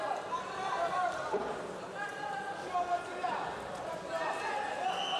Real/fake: real